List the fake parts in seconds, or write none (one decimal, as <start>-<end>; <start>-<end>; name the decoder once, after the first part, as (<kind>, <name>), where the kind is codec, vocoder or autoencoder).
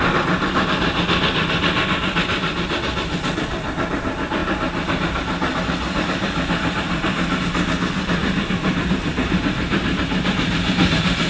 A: 8.2-11.3 (vocoder, BigVGAN v2)